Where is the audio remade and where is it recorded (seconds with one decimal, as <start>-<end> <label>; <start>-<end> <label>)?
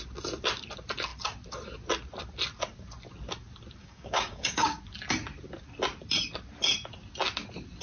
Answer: 0.0-3.8 recorded; 3.8-4.8 remade; 4.8-7.8 recorded